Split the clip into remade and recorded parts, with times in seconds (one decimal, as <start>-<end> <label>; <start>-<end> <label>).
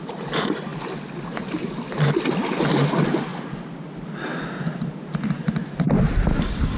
0.0-6.8 recorded